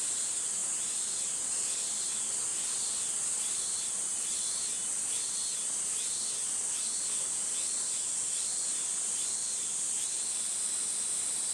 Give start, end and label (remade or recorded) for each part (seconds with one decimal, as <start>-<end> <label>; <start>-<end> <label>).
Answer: 0.0-11.5 recorded